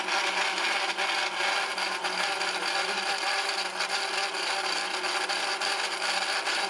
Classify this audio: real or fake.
real